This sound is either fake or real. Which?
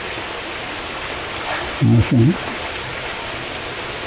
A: real